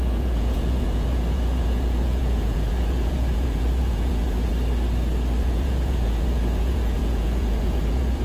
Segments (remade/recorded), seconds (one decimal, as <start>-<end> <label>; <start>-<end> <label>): 0.0-4.5 remade; 4.5-5.4 recorded; 5.4-8.2 remade